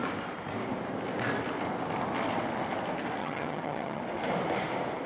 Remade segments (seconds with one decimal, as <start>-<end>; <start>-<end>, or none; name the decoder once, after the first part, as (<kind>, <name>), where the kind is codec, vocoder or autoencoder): 3.2-4.0 (vocoder, HiFi-GAN)